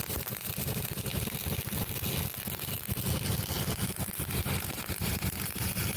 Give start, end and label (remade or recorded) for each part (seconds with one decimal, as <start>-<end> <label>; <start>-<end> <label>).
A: 0.0-1.1 remade; 1.1-4.3 recorded; 4.3-6.0 remade